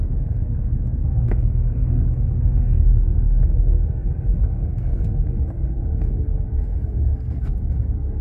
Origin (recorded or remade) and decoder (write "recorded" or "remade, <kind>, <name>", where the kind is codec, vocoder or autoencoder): remade, codec, SNAC